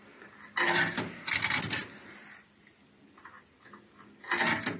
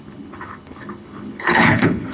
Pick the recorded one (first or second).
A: first